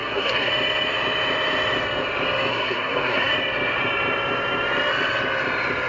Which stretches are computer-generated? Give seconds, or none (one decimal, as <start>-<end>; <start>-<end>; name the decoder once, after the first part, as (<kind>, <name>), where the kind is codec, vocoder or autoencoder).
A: 0.0-0.5 (codec, SNAC); 2.5-3.3